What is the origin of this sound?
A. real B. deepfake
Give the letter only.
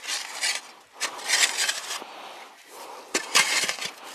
A